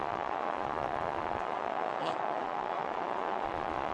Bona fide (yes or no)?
no